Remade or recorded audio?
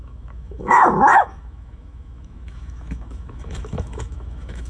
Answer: remade